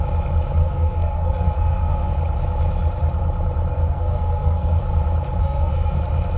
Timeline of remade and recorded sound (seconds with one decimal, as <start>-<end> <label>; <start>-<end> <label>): 0.0-0.6 recorded; 0.6-2.1 remade; 2.1-3.7 recorded; 3.7-4.8 remade; 4.8-5.4 recorded; 5.4-6.0 remade; 6.0-6.4 recorded